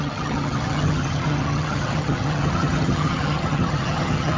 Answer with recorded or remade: remade